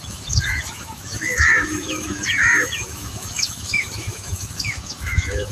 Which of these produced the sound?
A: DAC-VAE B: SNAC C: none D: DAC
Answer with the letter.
A